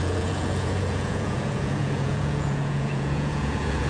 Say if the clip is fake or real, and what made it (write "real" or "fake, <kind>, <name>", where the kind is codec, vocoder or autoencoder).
fake, vocoder, Vocos